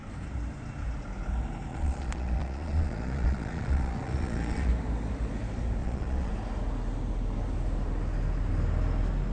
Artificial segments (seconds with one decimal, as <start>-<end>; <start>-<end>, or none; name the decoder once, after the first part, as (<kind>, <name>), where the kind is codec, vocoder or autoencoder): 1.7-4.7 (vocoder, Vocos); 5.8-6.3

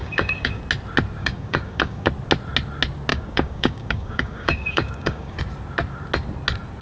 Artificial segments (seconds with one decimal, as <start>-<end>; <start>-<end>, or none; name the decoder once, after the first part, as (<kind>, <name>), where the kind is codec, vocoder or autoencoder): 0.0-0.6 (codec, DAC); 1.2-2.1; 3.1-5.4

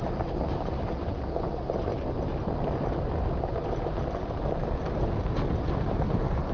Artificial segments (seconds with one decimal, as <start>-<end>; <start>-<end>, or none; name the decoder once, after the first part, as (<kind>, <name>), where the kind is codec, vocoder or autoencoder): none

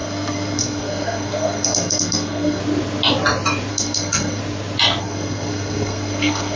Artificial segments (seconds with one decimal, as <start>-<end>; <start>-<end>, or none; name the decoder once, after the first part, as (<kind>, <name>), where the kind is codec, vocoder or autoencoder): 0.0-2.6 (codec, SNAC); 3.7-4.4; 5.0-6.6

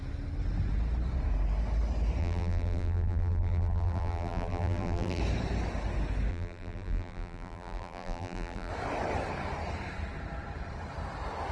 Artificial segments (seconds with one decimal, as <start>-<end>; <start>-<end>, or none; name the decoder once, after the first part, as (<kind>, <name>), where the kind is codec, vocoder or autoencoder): 2.2-5.2 (vocoder, BigVGAN v2); 6.3-8.7

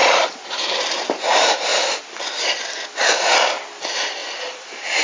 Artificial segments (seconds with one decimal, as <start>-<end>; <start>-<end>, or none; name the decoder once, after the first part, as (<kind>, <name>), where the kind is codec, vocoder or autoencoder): 0.0-1.7 (vocoder, BigVGAN v2); 3.8-5.0